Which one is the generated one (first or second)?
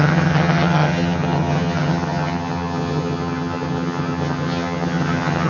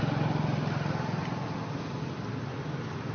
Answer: first